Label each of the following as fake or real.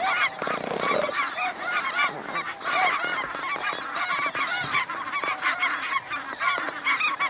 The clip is fake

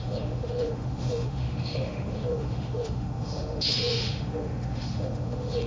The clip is fake